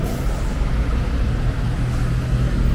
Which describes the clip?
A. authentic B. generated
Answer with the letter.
A